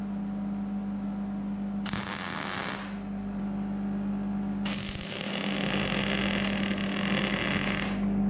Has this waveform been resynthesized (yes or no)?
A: no